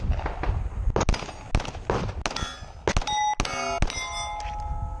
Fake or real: real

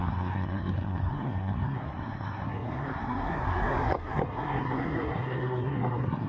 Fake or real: fake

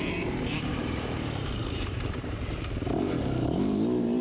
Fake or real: fake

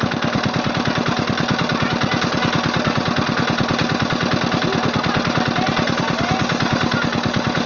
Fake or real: real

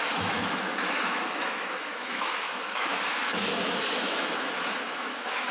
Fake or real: fake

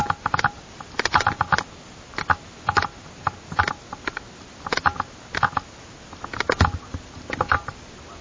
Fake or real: real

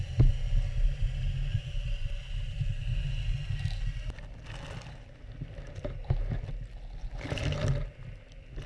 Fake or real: real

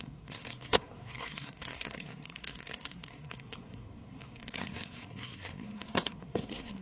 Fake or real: fake